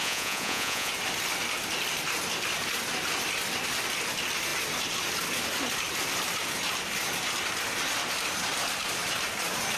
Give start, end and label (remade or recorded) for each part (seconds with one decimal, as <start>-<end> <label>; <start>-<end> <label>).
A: 0.0-0.9 remade; 0.9-9.8 recorded